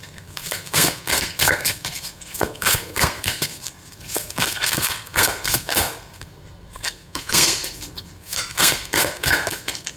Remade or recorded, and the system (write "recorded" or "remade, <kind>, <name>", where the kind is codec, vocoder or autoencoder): remade, codec, SNAC